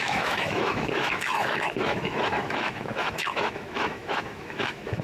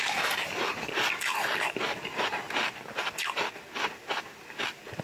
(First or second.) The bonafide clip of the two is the second